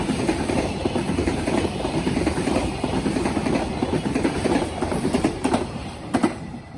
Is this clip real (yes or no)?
no